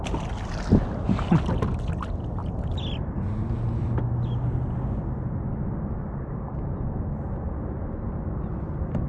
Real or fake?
real